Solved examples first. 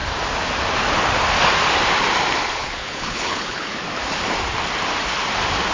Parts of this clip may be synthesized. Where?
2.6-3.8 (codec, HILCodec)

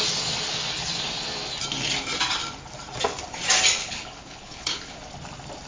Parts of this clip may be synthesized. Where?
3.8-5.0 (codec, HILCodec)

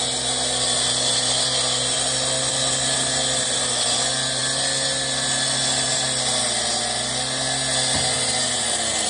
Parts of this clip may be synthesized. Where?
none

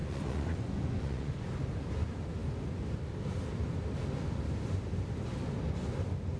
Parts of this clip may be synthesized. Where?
0.0-1.3 (vocoder, Vocos)

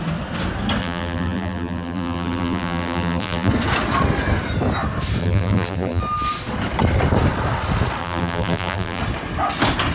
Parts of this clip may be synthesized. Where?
0.8-3.5 (vocoder, BigVGAN v2); 5.2-6.0; 8.0-9.0

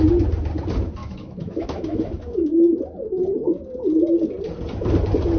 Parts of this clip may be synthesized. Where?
1.0-2.8 (autoencoder, DAC-VAE)